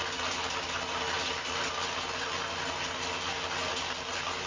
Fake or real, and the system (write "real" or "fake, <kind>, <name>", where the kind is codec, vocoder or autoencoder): real